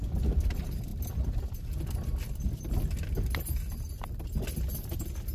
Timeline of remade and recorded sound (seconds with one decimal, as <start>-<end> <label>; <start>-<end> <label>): 0.0-5.3 recorded